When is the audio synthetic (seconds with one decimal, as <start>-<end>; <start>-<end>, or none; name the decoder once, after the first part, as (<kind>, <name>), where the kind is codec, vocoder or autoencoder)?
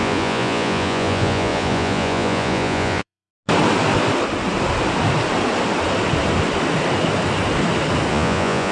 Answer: 0.0-3.3 (vocoder, Vocos); 8.1-8.7